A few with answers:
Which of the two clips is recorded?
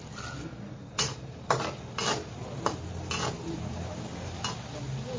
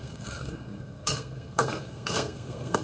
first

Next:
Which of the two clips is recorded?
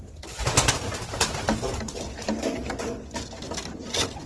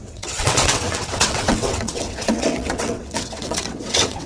first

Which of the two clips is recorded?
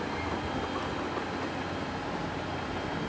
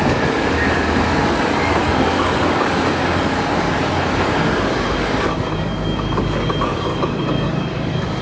first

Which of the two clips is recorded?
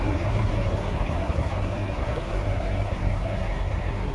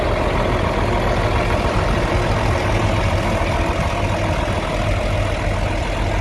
second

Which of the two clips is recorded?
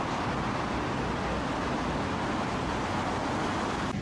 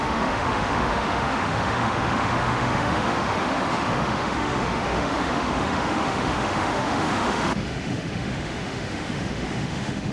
first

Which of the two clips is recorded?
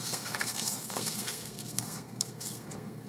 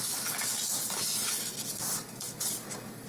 second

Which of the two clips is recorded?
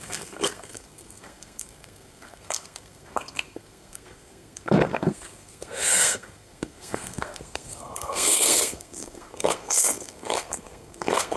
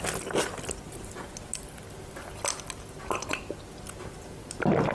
second